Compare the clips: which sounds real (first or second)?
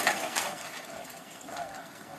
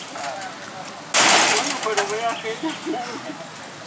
second